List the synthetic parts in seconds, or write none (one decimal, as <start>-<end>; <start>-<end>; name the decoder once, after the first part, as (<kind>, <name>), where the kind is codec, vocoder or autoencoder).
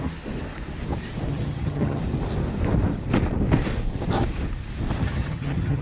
1.3-2.0 (vocoder, HiFi-GAN); 5.0-5.8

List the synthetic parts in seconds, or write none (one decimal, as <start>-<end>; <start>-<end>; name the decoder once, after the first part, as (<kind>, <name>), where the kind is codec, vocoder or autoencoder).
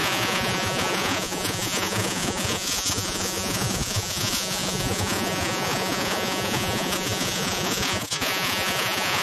0.0-9.2 (vocoder, Vocos)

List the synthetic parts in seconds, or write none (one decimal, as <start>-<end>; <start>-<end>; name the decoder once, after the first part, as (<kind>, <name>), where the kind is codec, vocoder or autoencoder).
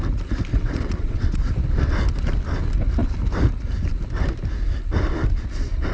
0.5-1.5 (vocoder, WaveNeXt)